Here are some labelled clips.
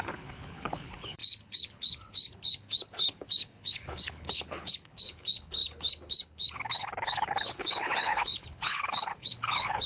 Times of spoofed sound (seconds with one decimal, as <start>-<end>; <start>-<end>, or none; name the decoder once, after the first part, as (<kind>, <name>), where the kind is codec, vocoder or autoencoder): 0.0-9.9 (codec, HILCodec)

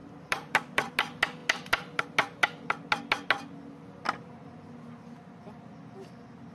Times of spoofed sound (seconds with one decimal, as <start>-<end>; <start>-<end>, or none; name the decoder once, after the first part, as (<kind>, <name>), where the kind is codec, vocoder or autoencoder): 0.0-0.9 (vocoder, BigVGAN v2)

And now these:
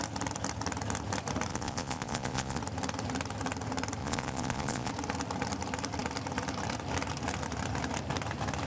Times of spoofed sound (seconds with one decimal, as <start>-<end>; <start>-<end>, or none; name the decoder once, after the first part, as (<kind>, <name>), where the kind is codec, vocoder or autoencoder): 1.5-2.6 (vocoder, Vocos); 4.0-4.9

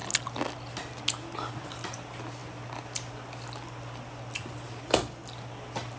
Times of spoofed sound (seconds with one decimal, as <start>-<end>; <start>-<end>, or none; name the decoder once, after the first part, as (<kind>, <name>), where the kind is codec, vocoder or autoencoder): none

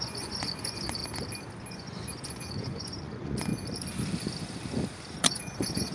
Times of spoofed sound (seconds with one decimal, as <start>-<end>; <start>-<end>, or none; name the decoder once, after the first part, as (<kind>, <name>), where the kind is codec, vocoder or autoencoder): 0.0-1.0 (vocoder, Vocos); 1.7-3.5; 5.2-5.9

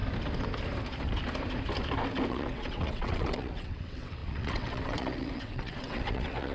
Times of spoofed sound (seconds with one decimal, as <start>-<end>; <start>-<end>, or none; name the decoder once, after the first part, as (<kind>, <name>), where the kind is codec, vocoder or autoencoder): 2.3-6.5 (vocoder, WaveNeXt)